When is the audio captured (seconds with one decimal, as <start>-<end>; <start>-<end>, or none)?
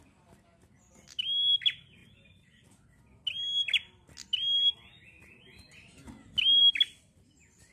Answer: 0.0-7.7